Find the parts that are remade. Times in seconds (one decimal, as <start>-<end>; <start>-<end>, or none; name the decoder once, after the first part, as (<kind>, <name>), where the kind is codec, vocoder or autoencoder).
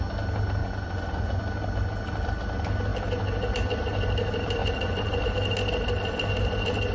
0.6-1.4 (vocoder, Vocos); 4.6-5.2